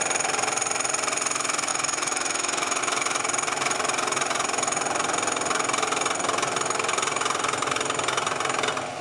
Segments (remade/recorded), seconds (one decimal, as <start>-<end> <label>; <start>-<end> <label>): 0.0-1.7 recorded; 1.7-2.8 remade; 2.8-9.0 recorded